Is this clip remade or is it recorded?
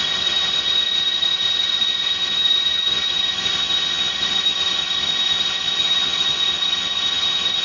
remade